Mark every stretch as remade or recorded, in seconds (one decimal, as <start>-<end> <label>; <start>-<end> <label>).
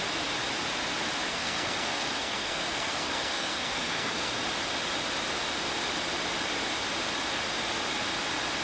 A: 0.0-1.3 recorded; 1.3-4.3 remade; 4.3-8.6 recorded